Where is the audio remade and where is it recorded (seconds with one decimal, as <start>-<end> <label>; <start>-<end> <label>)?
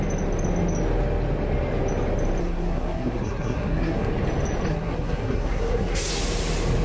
0.0-2.4 recorded; 2.4-4.1 remade; 4.1-4.7 recorded; 4.7-6.1 remade; 6.1-6.8 recorded